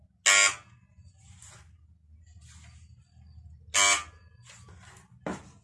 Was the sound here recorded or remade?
recorded